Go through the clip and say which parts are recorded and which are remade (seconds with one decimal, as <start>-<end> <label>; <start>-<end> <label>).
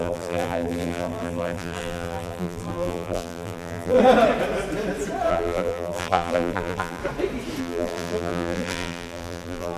0.0-4.0 remade; 4.0-5.3 recorded; 5.3-7.0 remade; 7.0-7.6 recorded; 7.6-9.8 remade